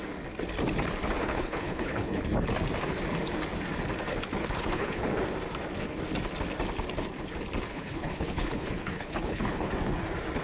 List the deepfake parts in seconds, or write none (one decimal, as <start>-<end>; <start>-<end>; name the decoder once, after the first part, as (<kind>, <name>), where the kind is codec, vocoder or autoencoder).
1.2-2.2 (codec, HILCodec); 4.4-5.0; 7.7-9.7